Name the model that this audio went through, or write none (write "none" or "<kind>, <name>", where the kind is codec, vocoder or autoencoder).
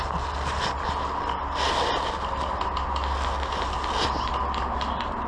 none